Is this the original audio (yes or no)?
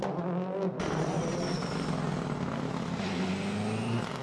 yes